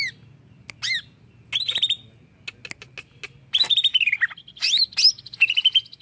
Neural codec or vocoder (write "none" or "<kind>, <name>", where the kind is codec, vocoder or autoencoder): none